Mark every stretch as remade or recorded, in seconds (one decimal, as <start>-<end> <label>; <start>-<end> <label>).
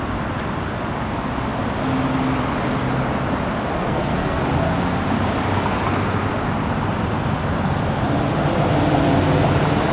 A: 0.0-3.8 recorded; 3.8-4.4 remade; 4.4-9.9 recorded